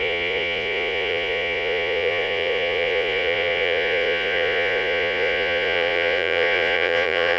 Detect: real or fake fake